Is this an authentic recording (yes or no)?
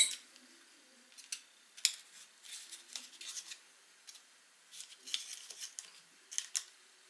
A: yes